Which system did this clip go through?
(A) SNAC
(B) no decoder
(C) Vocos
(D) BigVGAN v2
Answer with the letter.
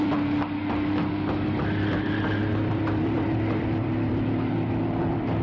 D